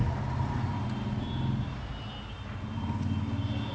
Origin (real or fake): real